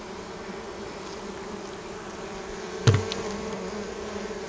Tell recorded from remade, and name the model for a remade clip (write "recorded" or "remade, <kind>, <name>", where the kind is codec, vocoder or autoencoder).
recorded